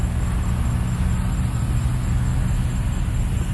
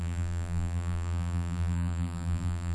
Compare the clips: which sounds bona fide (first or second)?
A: first